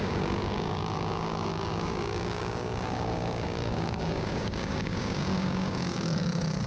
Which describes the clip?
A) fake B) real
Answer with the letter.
A